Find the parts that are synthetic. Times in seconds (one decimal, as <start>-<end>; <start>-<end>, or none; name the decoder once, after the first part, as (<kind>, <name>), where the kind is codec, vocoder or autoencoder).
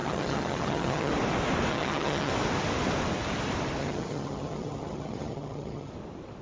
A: 0.0-1.1 (vocoder, HiFi-GAN); 1.7-2.3; 3.8-5.9